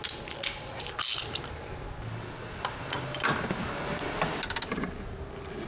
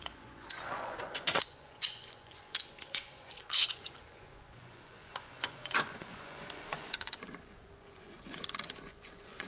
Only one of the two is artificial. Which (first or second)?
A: second